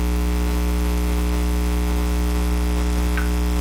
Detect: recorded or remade recorded